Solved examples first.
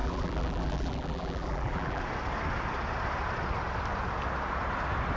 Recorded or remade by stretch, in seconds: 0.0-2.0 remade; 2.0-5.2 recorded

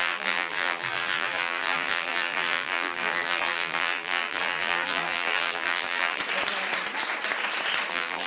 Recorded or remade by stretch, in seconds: 0.0-6.2 remade; 6.2-7.9 recorded; 7.9-8.3 remade

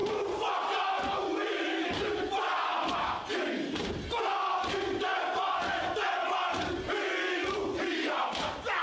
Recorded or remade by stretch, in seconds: 0.0-0.5 recorded; 0.5-5.1 remade; 5.1-7.9 recorded; 7.9-8.8 remade

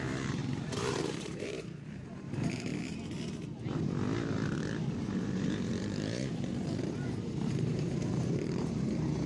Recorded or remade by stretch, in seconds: 0.0-0.4 remade; 0.4-0.9 recorded; 0.9-2.7 remade; 2.7-5.0 recorded; 5.0-9.3 remade

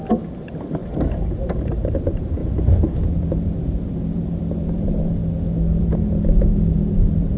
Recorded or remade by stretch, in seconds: 0.0-2.4 remade; 2.4-3.1 recorded; 3.1-5.2 remade; 5.2-5.8 recorded; 5.8-7.4 remade

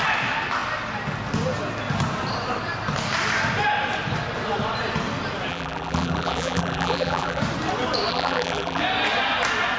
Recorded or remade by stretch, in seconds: 0.0-5.5 recorded; 5.5-7.4 remade; 7.4-8.1 recorded; 8.1-8.8 remade; 8.8-9.8 recorded

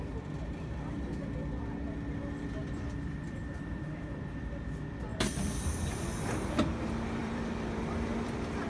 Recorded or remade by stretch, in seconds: 0.0-2.6 recorded; 2.6-3.2 remade; 3.2-7.2 recorded; 7.2-8.7 remade